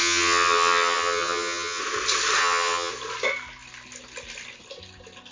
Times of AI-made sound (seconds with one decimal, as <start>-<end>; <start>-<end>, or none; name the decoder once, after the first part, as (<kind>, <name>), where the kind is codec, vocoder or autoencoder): 0.0-1.8 (vocoder, HiFi-GAN); 2.4-2.9